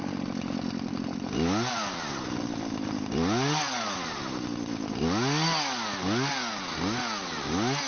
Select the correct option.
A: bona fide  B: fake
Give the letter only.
A